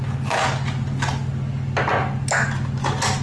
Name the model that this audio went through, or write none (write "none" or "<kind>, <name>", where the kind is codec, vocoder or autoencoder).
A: none